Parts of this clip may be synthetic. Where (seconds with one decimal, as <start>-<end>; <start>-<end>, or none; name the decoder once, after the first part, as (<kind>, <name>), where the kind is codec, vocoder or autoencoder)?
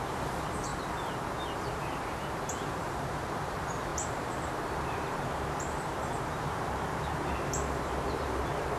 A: 0.0-0.7 (vocoder, BigVGAN v2); 2.5-8.8